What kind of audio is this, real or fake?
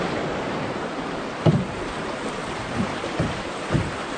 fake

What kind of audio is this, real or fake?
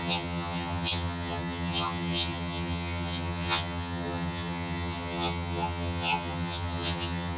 fake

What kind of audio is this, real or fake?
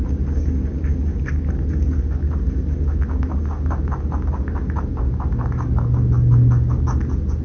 real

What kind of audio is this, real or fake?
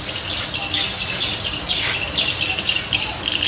real